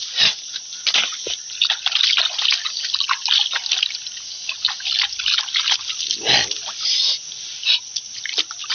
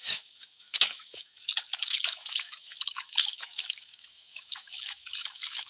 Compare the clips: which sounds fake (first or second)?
second